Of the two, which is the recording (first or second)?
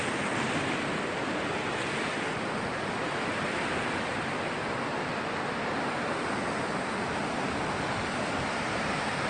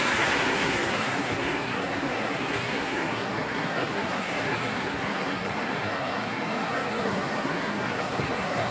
first